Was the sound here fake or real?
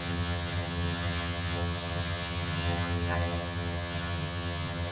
fake